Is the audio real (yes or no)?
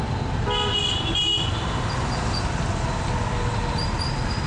yes